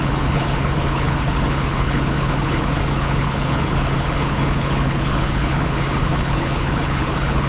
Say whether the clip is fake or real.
fake